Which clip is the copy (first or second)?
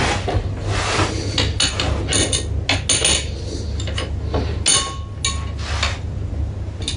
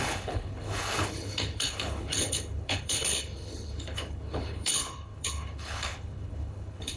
second